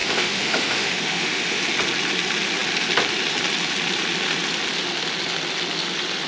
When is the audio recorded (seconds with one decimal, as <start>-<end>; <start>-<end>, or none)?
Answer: 1.6-6.3